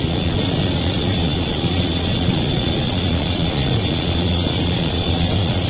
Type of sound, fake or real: fake